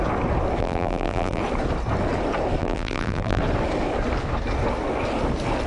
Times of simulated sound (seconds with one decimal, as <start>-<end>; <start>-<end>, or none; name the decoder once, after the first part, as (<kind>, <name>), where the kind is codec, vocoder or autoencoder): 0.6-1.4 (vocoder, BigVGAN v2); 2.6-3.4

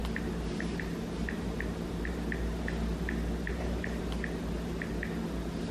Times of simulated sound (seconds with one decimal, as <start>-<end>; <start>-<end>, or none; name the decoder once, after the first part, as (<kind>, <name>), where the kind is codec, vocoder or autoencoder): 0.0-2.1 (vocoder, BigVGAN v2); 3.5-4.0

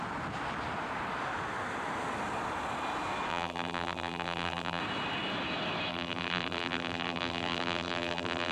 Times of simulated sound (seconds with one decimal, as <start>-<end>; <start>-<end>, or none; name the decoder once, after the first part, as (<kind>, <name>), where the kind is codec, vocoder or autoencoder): 3.3-4.8 (vocoder, BigVGAN v2); 5.9-8.5

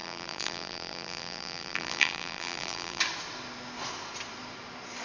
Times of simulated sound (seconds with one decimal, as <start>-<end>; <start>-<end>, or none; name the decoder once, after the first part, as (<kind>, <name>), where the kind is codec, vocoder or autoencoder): 0.0-3.0 (vocoder, BigVGAN v2)